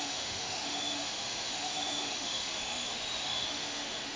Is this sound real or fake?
fake